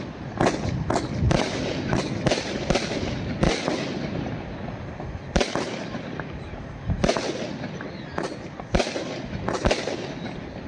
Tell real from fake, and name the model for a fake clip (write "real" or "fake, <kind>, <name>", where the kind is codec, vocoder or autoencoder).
real